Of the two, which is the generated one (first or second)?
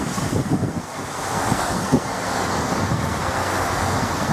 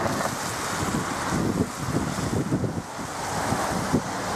first